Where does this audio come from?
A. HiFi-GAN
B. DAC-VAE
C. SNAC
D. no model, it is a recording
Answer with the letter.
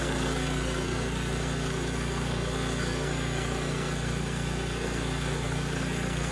C